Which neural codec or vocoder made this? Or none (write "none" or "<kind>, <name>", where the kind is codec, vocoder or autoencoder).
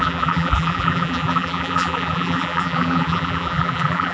vocoder, BigVGAN v2